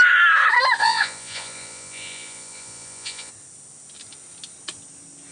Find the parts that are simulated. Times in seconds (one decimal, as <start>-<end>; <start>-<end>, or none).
0.8-3.3